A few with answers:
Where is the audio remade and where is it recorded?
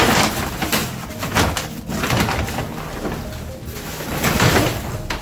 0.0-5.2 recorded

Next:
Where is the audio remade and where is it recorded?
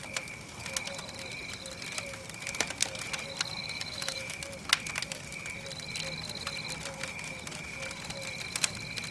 0.0-3.6 recorded; 3.6-4.4 remade; 4.4-9.1 recorded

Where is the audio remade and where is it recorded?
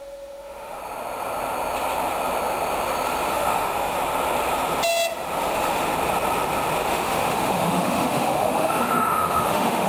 0.0-0.8 remade; 0.8-3.3 recorded; 3.3-3.9 remade; 3.9-5.5 recorded; 5.5-5.9 remade; 5.9-6.8 recorded; 6.8-9.9 remade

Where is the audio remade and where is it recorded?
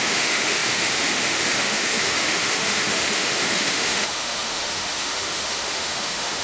0.0-6.4 remade